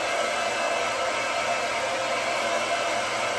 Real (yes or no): yes